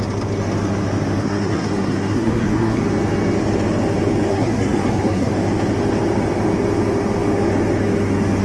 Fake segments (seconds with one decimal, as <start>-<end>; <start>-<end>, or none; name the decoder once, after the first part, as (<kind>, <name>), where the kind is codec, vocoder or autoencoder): 1.2-2.8 (codec, SNAC); 4.3-5.3